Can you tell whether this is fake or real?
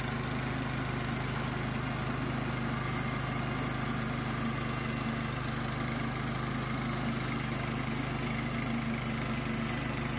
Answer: real